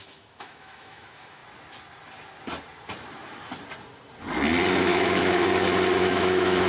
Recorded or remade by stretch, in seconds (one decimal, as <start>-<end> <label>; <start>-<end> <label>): 0.0-1.4 remade; 1.4-4.7 recorded; 4.7-5.5 remade; 5.5-6.0 recorded; 6.0-6.7 remade